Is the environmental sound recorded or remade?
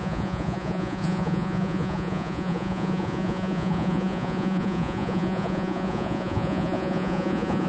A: remade